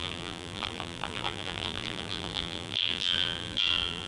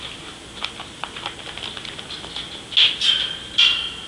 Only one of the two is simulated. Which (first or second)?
first